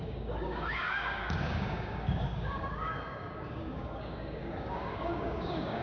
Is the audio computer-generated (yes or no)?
yes